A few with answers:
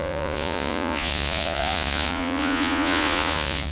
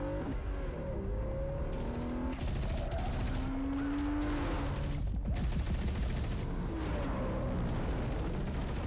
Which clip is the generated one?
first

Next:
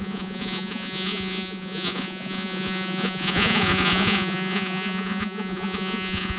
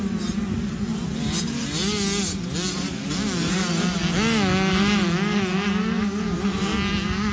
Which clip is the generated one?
first